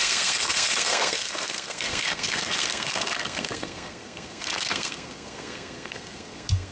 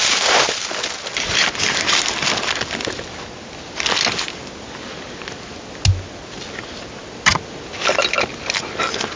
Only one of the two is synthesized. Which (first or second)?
first